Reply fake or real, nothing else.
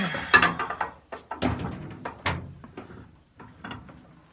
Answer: real